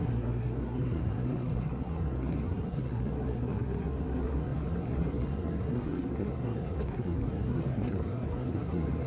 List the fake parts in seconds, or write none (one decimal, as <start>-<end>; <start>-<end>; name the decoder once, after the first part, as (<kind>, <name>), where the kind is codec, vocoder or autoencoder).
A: 0.0-9.1 (codec, SNAC)